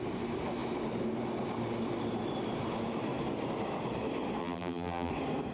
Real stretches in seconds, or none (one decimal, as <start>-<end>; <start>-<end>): 0.0-4.4; 5.1-5.5